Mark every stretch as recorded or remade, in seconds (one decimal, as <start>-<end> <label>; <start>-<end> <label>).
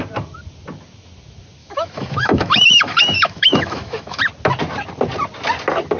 0.0-1.6 recorded; 1.6-4.2 remade; 4.2-6.0 recorded